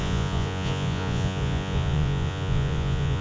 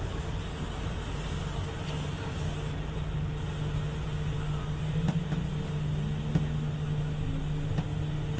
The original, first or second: second